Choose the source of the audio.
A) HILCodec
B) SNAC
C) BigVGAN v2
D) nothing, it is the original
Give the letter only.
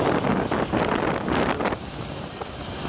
D